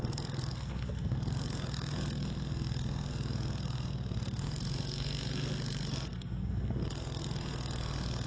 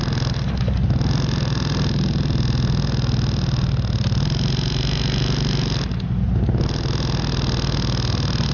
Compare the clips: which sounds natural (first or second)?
second